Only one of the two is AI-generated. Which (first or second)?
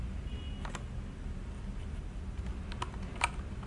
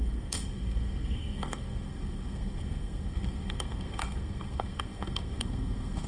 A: second